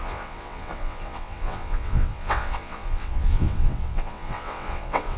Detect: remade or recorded remade